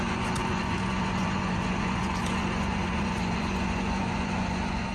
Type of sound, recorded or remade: remade